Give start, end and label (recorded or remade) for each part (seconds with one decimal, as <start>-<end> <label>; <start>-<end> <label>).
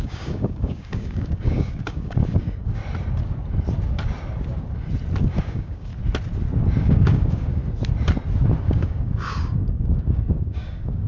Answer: 0.0-2.8 remade; 2.8-5.2 recorded; 5.2-5.9 remade; 5.9-6.8 recorded; 6.8-7.6 remade; 7.6-8.6 recorded; 8.6-11.1 remade